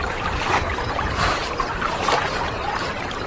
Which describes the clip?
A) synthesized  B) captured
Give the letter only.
A